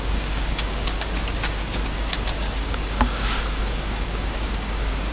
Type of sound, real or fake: fake